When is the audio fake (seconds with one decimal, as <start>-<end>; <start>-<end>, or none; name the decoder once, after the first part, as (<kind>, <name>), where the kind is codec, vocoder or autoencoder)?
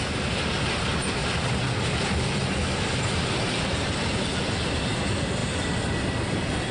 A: none